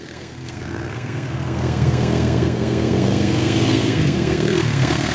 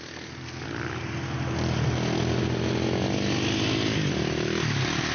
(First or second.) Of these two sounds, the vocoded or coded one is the first